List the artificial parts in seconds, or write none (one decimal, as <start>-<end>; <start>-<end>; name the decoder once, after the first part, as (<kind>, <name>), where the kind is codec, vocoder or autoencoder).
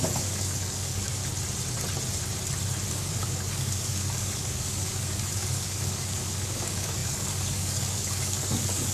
0.0-1.2 (codec, DAC); 2.9-8.9